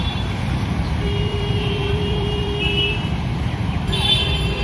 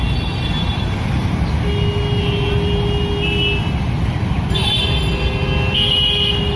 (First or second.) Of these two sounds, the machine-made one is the first